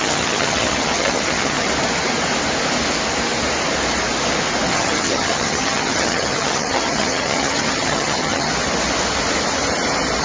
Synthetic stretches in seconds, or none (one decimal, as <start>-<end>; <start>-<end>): 0.0-1.7; 4.7-8.5